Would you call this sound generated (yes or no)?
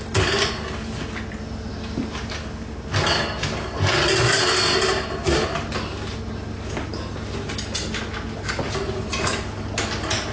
no